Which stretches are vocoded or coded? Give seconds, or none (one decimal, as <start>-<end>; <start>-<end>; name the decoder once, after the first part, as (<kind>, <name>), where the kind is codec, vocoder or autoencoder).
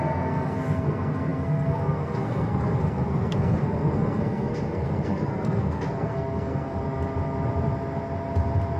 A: 0.0-6.8 (codec, SNAC)